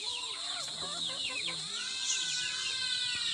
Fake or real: real